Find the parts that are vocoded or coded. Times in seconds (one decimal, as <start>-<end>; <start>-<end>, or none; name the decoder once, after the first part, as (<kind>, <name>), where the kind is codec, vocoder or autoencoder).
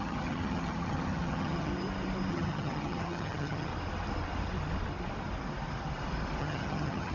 0.0-1.7 (vocoder, HiFi-GAN); 2.3-3.7; 6.4-7.1